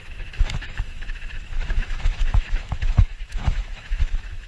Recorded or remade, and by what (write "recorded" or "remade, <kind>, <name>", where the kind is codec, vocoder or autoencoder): remade, autoencoder, DAC-VAE